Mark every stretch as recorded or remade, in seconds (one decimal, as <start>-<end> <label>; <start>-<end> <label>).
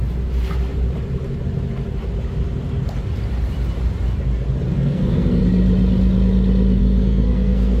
0.0-4.7 recorded; 4.7-5.4 remade; 5.4-6.8 recorded; 6.8-7.8 remade